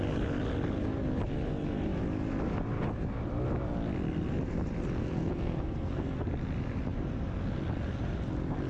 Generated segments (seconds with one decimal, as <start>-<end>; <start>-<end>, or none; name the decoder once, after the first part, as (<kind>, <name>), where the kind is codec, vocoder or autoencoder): 5.0-6.2 (codec, SNAC)